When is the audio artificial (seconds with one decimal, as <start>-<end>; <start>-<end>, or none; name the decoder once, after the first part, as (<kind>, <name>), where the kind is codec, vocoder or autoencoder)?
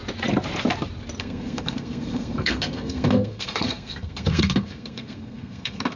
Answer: 1.2-6.0 (codec, SNAC)